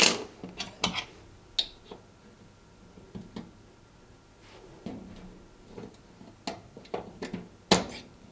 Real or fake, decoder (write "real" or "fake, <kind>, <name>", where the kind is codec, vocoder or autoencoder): real